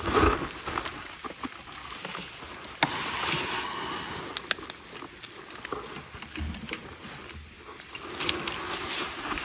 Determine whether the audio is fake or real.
real